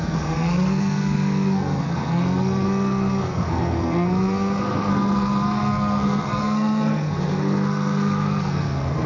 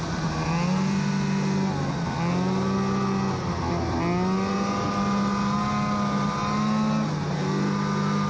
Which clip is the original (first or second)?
second